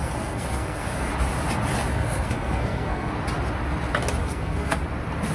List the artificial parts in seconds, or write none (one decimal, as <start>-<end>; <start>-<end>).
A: 0.0-1.1; 1.9-3.1; 4.2-4.8